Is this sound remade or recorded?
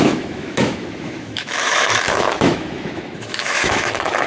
remade